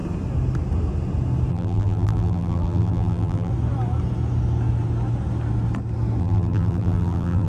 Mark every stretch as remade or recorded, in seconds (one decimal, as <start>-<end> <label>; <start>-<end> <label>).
0.0-1.5 recorded; 1.5-3.5 remade; 3.5-6.2 recorded; 6.2-7.5 remade